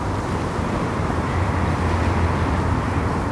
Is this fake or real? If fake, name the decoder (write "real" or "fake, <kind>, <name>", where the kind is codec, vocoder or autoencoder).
real